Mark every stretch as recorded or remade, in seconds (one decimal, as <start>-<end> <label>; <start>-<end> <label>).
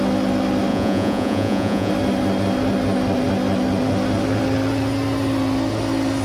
0.0-0.7 recorded; 0.7-1.9 remade; 1.9-6.2 recorded